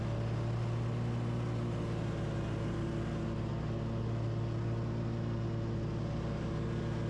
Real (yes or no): yes